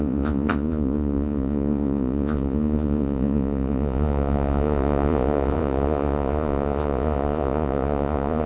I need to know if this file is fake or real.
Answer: fake